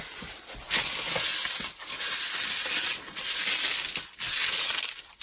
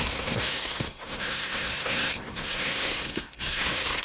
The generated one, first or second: second